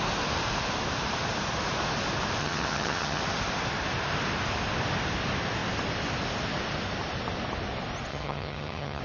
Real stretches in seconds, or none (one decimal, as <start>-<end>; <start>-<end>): 0.0-2.4; 3.2-8.1